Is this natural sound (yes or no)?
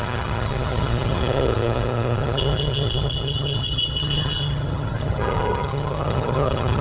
no